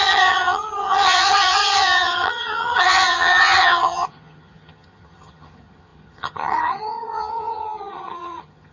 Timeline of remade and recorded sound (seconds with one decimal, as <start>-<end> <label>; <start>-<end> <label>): 0.0-8.7 remade